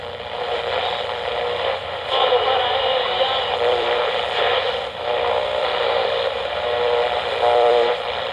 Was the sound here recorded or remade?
remade